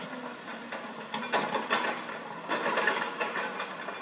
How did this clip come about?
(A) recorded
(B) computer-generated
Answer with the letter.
A